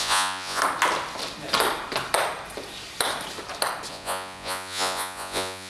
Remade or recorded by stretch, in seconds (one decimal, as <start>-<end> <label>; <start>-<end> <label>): 0.0-0.6 remade; 0.6-3.9 recorded; 3.9-5.7 remade